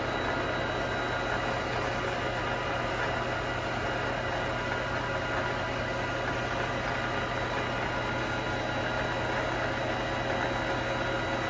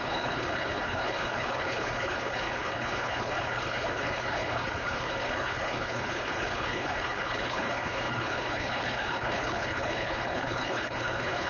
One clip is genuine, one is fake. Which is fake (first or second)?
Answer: second